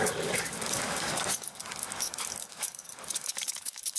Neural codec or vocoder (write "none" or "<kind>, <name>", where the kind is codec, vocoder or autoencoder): codec, DAC